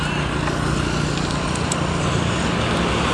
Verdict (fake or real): real